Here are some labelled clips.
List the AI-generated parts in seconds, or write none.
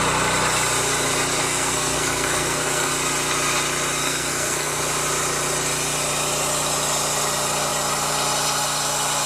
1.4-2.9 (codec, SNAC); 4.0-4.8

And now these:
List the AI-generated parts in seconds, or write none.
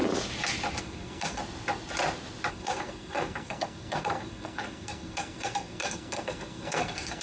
0.8-1.4 (codec, SNAC); 2.5-7.2